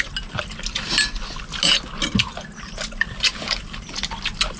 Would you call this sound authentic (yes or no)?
yes